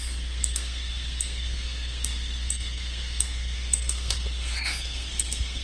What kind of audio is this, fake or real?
fake